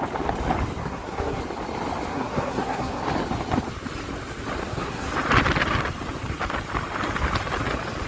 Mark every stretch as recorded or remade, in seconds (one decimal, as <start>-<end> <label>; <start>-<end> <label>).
0.0-0.8 recorded; 0.8-1.4 remade; 1.4-2.1 recorded; 2.1-3.0 remade; 3.0-4.6 recorded; 4.6-5.1 remade; 5.1-8.1 recorded